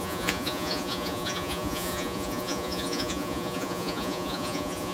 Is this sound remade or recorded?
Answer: remade